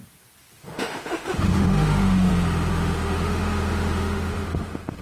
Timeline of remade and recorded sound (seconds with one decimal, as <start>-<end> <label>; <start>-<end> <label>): 0.0-0.6 recorded; 0.6-2.3 remade; 2.3-2.7 recorded; 2.7-5.0 remade